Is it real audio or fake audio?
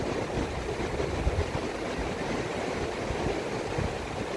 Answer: real